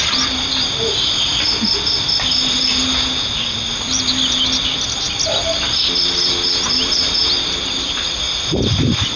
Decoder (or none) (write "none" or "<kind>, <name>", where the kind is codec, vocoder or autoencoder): none